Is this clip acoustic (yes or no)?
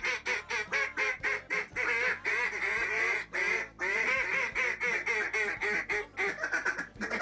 yes